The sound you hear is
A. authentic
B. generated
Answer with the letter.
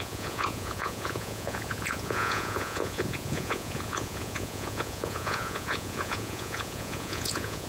B